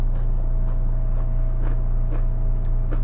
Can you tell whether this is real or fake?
real